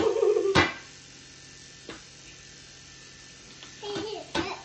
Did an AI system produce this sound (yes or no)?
no